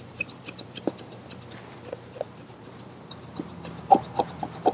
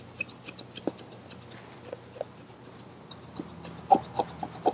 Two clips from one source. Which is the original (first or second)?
second